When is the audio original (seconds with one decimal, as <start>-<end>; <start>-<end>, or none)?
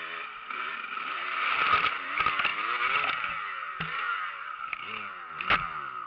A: 0.0-6.1